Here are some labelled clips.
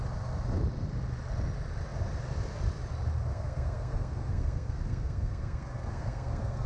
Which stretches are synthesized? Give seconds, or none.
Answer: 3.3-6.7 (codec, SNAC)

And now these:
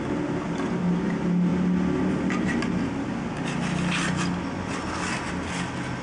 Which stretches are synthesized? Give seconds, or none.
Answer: none

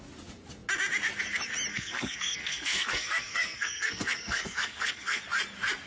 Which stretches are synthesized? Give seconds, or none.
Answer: 1.7-5.2 (codec, SNAC)

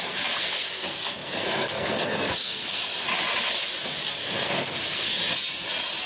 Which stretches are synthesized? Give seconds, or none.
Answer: 0.0-2.9 (codec, SNAC); 4.2-5.2

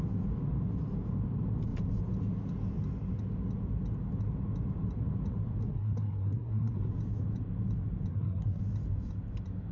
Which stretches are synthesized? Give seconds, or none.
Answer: 5.6-6.9 (codec, SNAC); 8.1-8.6

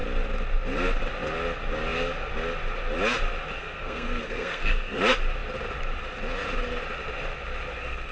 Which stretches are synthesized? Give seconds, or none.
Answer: 3.6-5.0 (codec, SNAC)

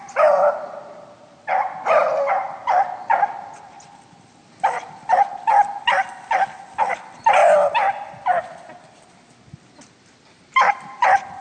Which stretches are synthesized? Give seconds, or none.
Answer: none